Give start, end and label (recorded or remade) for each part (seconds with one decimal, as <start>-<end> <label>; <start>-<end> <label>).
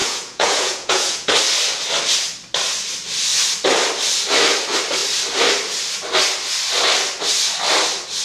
0.0-1.3 remade; 1.3-8.2 recorded